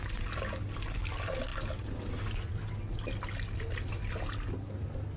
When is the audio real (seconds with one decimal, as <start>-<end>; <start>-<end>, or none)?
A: 0.0-5.2